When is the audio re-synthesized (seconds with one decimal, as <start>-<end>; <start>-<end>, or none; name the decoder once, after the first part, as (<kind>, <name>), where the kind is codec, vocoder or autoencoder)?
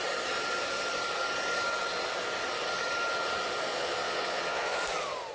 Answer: 3.7-4.8 (vocoder, Vocos)